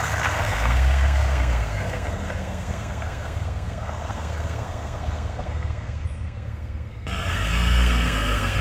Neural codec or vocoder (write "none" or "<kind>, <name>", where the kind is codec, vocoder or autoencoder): codec, SNAC